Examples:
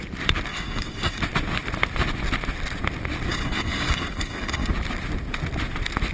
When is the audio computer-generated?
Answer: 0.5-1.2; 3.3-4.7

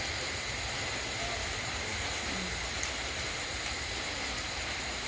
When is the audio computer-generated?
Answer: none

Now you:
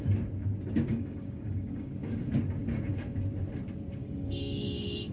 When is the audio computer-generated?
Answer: 0.9-1.9; 4.0-5.1

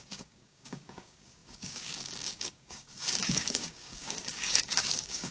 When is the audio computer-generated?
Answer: 0.0-5.3

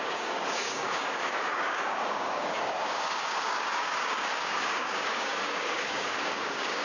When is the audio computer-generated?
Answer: 0.0-6.8

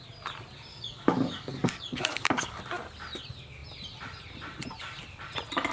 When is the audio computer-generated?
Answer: 0.7-2.6

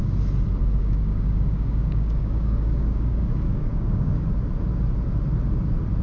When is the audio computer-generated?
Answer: 0.6-4.2

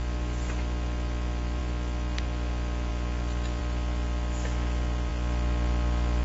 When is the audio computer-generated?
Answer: none